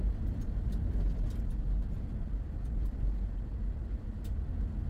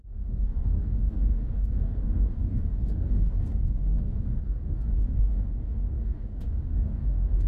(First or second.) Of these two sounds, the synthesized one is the second